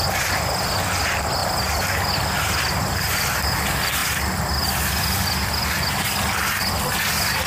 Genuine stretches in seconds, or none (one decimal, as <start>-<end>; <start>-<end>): 0.0-7.5